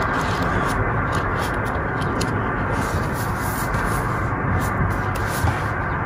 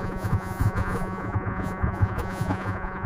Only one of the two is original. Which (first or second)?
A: first